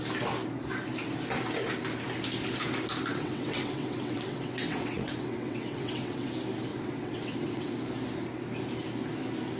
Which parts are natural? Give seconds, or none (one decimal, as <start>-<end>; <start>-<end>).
0.0-3.1; 6.3-6.7; 7.7-9.6